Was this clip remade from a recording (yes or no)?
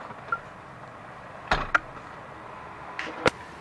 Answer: no